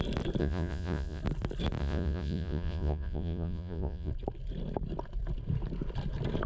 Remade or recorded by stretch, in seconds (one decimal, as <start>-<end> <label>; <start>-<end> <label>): 0.0-0.4 recorded; 0.4-1.2 remade; 1.2-1.8 recorded; 1.8-4.1 remade; 4.1-6.5 recorded

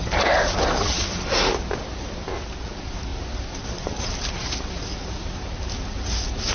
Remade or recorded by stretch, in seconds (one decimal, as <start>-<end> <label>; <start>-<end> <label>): 0.0-6.5 recorded

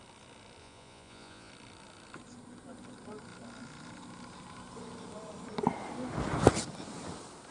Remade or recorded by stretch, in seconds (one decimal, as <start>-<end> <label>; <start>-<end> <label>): 0.0-0.6 recorded; 0.6-1.5 remade; 1.5-7.5 recorded

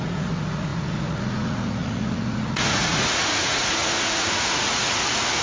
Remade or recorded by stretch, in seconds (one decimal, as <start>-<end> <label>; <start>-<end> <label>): 0.0-5.4 remade

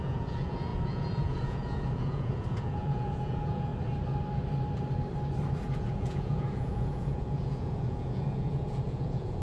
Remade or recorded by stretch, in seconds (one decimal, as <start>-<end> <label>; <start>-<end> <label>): 0.0-3.7 remade; 3.7-5.7 recorded; 5.7-9.4 remade